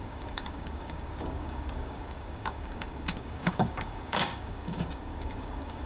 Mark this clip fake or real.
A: fake